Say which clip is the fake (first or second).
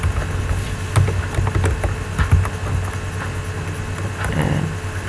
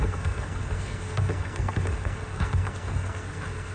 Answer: second